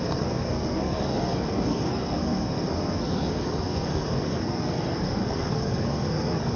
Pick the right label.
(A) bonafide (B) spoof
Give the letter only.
B